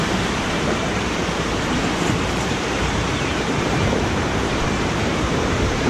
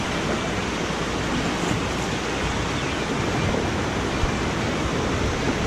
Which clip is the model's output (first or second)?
first